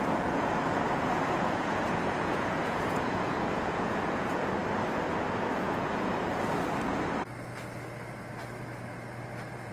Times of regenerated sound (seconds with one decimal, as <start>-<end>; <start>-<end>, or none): 0.0-4.6; 5.5-6.1